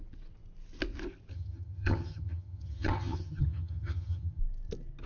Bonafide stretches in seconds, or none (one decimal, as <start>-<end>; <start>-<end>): 0.0-1.3; 4.4-5.1